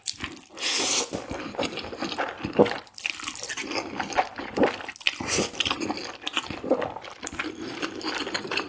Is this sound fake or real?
real